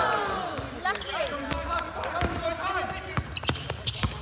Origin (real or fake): real